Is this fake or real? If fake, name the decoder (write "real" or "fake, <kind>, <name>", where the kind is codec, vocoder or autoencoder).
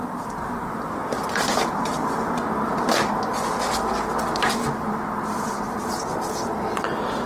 real